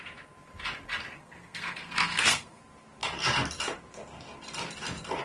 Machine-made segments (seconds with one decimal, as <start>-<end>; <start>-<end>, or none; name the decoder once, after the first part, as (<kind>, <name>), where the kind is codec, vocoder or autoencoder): 1.2-2.6 (codec, SNAC)